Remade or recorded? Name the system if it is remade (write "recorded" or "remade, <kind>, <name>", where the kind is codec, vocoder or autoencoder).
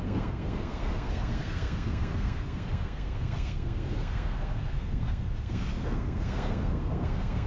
remade, codec, SNAC